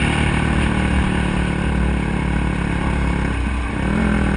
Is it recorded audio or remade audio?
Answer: recorded